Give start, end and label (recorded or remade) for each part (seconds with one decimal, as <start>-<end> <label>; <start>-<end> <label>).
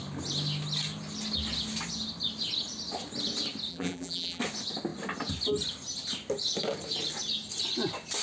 0.0-3.7 recorded; 3.7-4.4 remade; 4.4-8.2 recorded